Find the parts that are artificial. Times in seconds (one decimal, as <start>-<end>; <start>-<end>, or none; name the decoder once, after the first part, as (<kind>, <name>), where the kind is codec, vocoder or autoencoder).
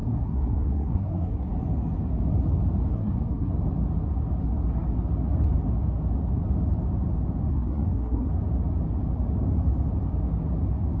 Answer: 0.0-1.5 (codec, SNAC); 2.9-3.5; 7.5-8.3